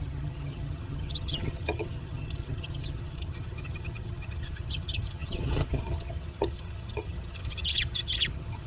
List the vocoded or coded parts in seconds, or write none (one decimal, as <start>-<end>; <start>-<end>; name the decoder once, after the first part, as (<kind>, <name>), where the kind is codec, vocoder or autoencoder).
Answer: 0.0-8.7 (vocoder, HiFi-GAN)